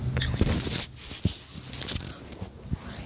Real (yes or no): yes